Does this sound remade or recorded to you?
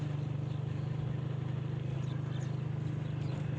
recorded